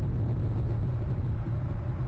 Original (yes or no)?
yes